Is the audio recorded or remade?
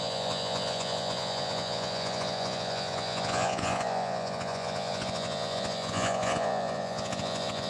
remade